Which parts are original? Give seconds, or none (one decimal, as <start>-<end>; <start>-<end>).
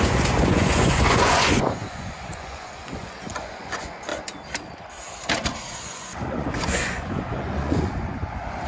4.1-5.6